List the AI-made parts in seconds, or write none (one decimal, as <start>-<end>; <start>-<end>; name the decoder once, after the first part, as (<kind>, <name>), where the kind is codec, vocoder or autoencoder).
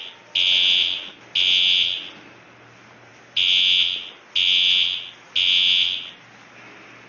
none